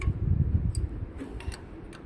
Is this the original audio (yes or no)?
yes